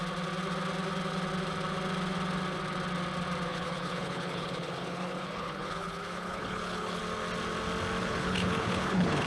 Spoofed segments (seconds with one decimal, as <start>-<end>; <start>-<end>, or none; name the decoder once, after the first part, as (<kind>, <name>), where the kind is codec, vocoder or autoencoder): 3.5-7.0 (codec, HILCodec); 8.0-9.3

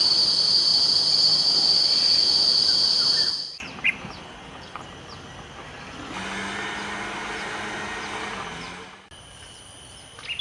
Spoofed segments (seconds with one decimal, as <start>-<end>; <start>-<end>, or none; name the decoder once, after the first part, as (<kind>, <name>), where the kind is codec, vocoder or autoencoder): 4.2-4.8 (codec, HILCodec)

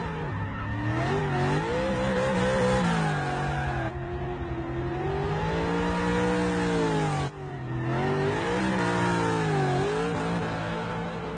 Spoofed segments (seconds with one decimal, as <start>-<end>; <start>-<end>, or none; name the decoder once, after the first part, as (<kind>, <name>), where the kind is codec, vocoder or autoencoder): none

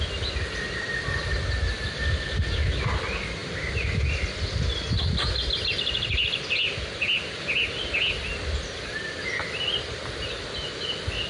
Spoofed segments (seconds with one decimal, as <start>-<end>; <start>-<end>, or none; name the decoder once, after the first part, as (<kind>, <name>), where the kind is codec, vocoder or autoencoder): none

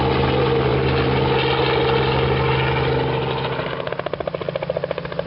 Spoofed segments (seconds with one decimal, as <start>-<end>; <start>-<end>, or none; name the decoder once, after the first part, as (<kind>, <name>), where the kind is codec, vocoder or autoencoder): none